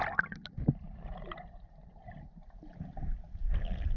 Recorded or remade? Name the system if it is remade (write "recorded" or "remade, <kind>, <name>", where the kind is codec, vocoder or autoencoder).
recorded